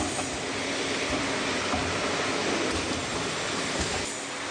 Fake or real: real